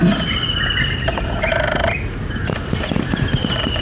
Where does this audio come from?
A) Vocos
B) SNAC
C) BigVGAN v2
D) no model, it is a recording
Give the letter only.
D